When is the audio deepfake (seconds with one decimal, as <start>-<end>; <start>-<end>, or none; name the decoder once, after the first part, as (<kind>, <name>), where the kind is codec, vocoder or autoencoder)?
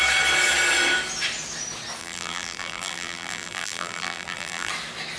2.0-4.7 (vocoder, BigVGAN v2)